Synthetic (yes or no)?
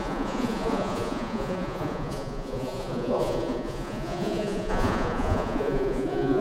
yes